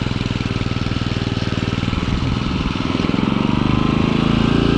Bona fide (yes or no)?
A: yes